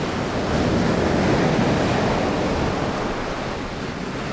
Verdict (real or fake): real